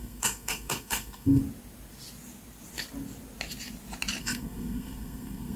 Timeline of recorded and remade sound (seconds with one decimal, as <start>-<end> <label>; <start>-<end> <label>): 0.0-1.4 remade; 1.4-4.2 recorded; 4.2-5.6 remade